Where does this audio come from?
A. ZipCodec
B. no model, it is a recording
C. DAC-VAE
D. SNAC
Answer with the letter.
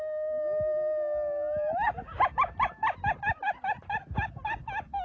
B